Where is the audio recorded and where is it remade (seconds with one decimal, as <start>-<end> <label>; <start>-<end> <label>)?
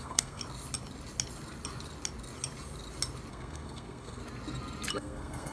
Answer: 0.0-0.4 remade; 0.4-3.3 recorded; 3.3-4.2 remade; 4.2-4.9 recorded; 4.9-5.5 remade